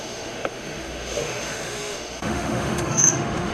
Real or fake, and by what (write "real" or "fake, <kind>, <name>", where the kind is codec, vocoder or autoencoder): fake, autoencoder, DAC-VAE